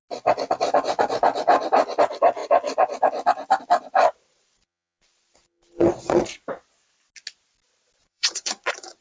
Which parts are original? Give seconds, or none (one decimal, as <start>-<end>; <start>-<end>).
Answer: 0.0-4.3; 6.2-8.0